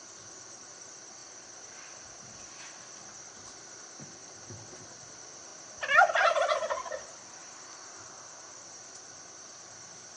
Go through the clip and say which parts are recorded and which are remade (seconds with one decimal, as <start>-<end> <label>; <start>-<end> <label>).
0.0-1.2 recorded; 1.2-2.5 remade; 2.5-7.4 recorded; 7.4-8.3 remade; 8.3-10.2 recorded